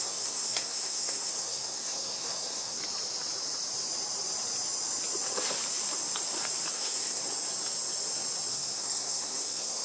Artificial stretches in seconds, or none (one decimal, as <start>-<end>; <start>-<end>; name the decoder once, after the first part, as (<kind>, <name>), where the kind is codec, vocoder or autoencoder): 0.0-2.8 (codec, SNAC); 6.7-7.2; 8.5-9.8